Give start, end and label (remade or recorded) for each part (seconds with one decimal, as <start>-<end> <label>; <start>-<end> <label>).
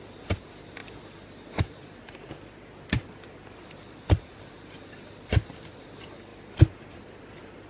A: 0.0-7.7 recorded